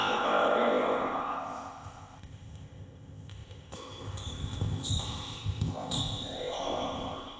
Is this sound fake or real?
fake